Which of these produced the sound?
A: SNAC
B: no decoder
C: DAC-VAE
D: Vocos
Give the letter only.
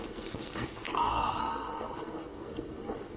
A